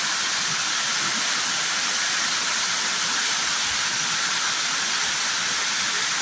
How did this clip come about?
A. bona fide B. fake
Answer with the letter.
A